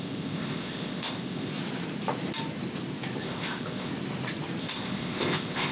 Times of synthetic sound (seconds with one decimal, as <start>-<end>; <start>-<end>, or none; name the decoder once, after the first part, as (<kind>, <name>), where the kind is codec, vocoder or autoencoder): 0.0-1.5 (codec, ZipCodec); 3.2-3.9; 4.6-5.7